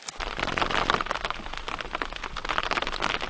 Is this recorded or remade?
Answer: recorded